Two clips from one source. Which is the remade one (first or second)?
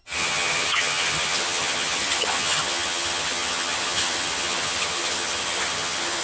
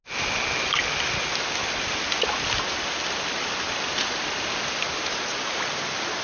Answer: first